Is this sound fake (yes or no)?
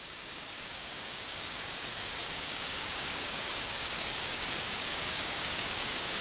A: yes